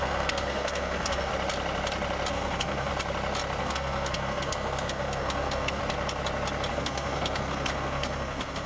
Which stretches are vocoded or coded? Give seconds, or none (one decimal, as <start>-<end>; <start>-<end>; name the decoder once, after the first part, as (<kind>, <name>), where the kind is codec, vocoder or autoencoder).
0.0-1.3 (codec, SNAC); 2.3-2.9; 3.6-5.8; 6.7-8.7